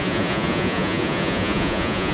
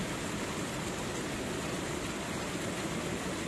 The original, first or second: second